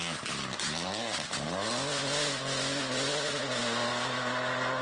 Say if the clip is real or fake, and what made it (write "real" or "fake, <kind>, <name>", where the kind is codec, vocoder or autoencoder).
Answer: real